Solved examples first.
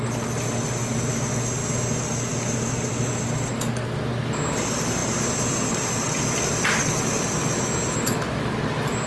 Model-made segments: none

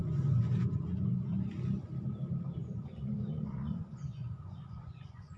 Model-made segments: 0.0-1.4 (vocoder, Vocos); 2.6-5.4

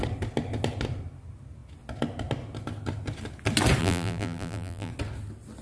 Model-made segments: 3.8-4.9 (vocoder, BigVGAN v2)

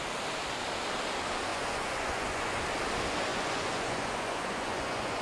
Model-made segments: 1.5-2.6 (vocoder, Vocos); 3.3-5.2

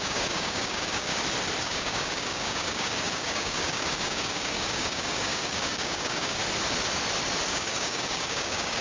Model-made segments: 0.0-1.1 (codec, DAC); 1.6-6.4; 7.5-8.8

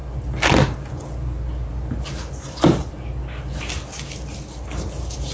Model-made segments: none